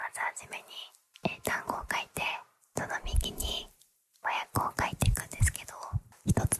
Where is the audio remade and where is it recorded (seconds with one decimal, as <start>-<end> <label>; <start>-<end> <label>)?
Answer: 0.0-1.1 recorded; 1.1-6.6 remade